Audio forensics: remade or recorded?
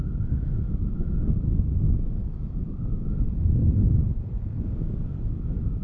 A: recorded